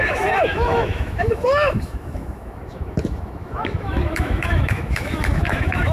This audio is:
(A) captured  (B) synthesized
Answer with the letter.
B